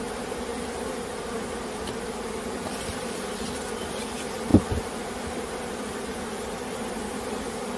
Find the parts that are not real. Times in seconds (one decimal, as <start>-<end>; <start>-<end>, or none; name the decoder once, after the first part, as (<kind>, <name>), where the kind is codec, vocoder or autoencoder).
none

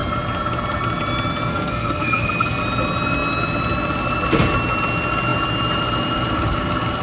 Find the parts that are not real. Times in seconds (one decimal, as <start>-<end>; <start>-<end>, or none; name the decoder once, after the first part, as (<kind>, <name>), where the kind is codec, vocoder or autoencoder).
1.5-2.6 (codec, SNAC)

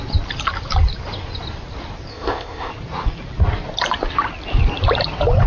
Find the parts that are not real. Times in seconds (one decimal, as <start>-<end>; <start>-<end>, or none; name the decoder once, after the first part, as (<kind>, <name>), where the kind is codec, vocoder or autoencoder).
2.1-2.7 (codec, ZipCodec)

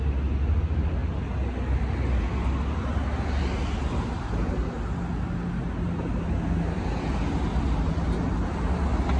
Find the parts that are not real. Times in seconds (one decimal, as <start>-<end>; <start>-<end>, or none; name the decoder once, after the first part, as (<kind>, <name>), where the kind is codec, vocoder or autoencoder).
none

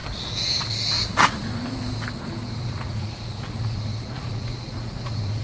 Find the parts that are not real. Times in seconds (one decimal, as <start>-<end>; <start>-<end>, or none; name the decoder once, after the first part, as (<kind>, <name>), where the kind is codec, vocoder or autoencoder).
2.6-5.4 (vocoder, Vocos)

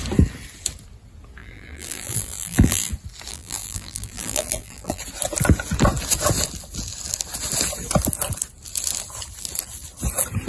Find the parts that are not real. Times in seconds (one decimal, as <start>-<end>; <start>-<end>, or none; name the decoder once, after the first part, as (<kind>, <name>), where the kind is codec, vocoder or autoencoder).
1.4-2.9 (vocoder, BigVGAN v2); 3.3-5.0

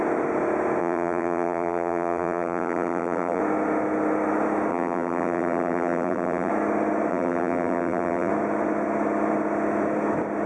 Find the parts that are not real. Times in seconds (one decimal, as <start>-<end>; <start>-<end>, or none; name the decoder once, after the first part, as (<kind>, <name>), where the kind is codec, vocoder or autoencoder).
0.8-3.4 (vocoder, BigVGAN v2); 4.7-6.5; 7.1-8.3

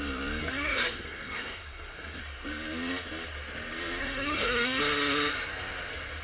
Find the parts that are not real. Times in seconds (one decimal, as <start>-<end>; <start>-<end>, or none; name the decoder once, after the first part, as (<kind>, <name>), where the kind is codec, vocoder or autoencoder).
0.4-2.2 (codec, SNAC); 4.0-4.8